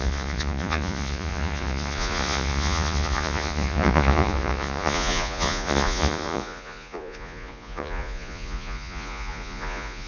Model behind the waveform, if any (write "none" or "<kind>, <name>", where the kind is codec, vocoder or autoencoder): vocoder, Vocos